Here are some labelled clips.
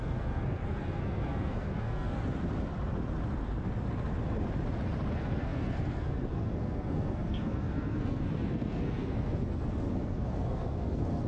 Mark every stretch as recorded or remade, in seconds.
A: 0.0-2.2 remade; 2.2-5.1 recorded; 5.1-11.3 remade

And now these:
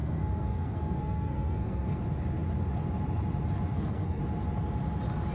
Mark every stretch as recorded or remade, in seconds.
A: 0.0-2.0 remade; 2.0-3.7 recorded; 3.7-4.2 remade; 4.2-5.3 recorded

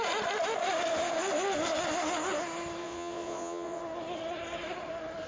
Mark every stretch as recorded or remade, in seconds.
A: 0.0-2.8 recorded; 2.8-3.8 remade; 3.8-5.3 recorded

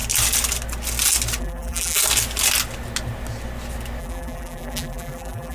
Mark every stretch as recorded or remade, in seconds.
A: 0.0-1.4 recorded; 1.4-2.0 remade; 2.0-4.0 recorded; 4.0-5.5 remade

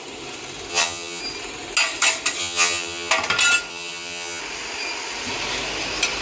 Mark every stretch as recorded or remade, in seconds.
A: 0.0-0.7 recorded; 0.7-1.2 remade; 1.2-2.4 recorded; 2.4-3.1 remade; 3.1-3.7 recorded; 3.7-4.4 remade; 4.4-6.2 recorded

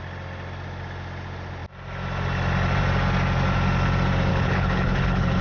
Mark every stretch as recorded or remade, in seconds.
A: 0.0-4.3 recorded; 4.3-5.4 remade

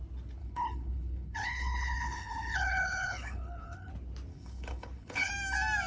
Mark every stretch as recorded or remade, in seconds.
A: 0.0-0.4 recorded; 0.4-3.9 remade; 3.9-4.3 recorded; 4.3-5.3 remade; 5.3-5.9 recorded

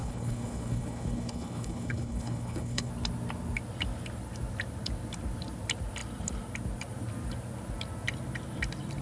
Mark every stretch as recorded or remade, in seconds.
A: 0.0-2.9 remade; 2.9-9.0 recorded